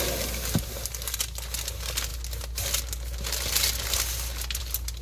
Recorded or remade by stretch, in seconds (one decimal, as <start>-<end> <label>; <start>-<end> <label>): 0.0-5.0 recorded